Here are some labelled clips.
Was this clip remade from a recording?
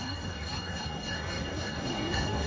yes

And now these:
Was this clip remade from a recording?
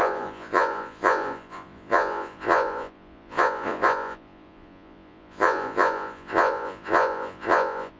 yes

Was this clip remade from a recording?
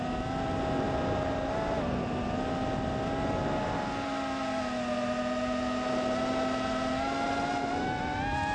no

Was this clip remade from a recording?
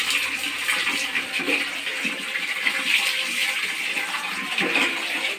no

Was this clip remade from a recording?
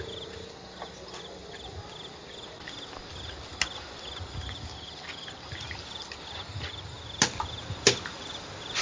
no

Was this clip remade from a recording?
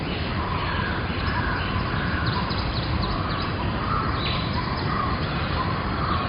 yes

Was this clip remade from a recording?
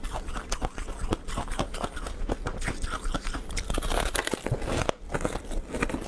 no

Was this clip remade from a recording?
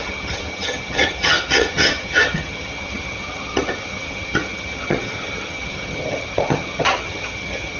yes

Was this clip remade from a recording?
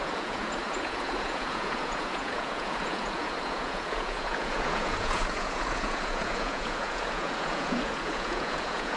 yes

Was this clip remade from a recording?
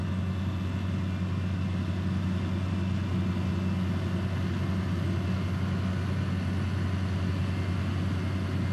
no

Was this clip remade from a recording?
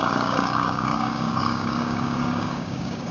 yes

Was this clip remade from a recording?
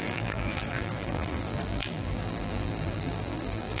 yes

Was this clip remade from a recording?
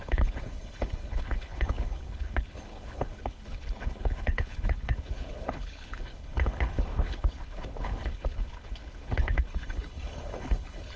yes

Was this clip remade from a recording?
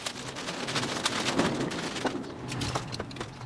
no